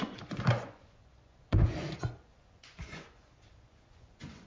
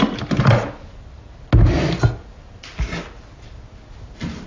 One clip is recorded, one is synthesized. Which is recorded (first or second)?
second